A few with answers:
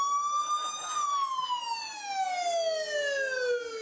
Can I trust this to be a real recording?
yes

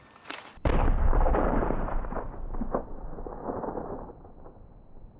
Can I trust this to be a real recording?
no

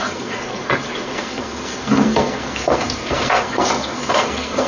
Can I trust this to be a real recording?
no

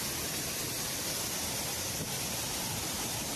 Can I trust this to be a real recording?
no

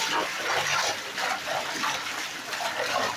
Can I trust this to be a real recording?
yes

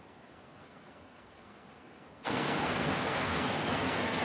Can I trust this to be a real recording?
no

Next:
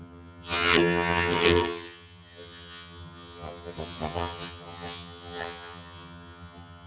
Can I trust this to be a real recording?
no